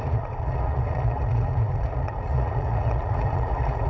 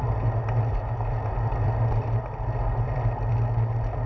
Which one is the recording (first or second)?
second